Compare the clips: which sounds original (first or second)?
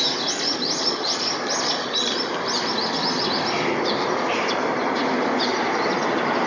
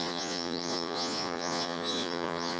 first